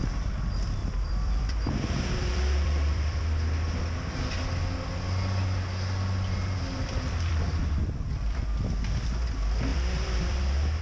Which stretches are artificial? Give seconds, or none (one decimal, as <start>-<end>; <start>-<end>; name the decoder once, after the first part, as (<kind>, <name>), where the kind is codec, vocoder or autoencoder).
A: 0.8-3.2 (vocoder, BigVGAN v2); 6.4-8.4; 9.7-10.4